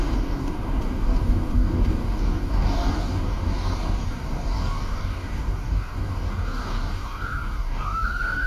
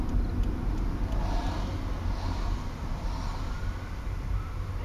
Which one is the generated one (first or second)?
first